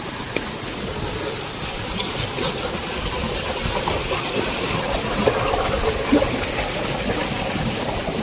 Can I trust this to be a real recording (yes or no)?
yes